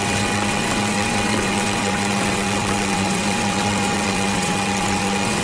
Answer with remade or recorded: remade